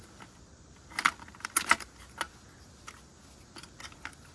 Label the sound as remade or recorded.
recorded